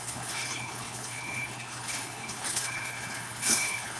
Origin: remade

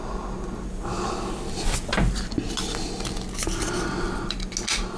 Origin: recorded